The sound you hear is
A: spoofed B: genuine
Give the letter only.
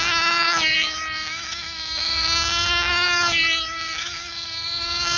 A